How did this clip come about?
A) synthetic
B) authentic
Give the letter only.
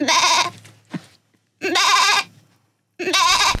B